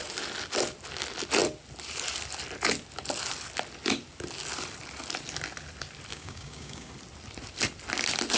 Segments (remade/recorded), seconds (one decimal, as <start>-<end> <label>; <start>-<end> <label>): 0.0-6.1 recorded; 6.1-6.9 remade; 6.9-8.4 recorded